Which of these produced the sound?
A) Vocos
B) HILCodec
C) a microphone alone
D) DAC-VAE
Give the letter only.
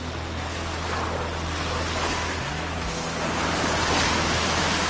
C